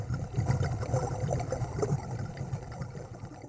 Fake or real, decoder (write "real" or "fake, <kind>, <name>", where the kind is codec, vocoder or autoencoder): real